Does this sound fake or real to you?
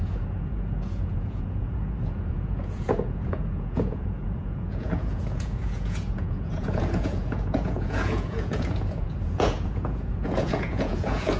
fake